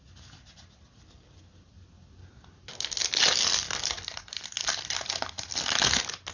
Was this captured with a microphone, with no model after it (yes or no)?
yes